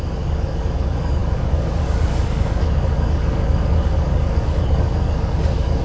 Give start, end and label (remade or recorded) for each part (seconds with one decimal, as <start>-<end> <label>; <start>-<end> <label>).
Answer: 0.0-5.8 remade